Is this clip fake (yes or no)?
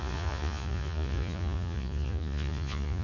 yes